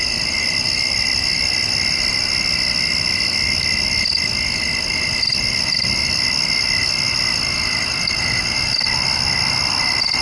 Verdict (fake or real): real